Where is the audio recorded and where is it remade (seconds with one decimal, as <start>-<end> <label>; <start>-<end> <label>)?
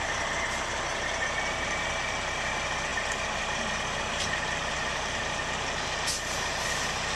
0.0-7.2 recorded